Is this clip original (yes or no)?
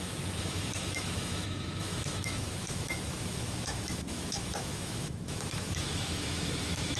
no